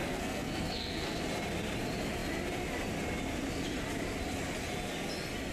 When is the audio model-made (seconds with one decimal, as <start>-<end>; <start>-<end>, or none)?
0.0-1.2